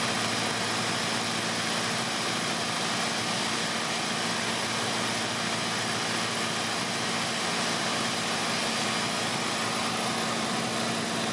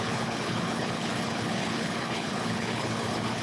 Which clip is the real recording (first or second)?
first